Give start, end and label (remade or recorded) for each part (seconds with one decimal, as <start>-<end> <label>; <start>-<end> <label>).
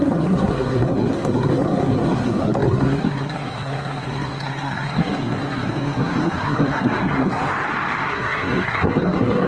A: 0.0-7.4 remade; 7.4-8.1 recorded; 8.1-9.5 remade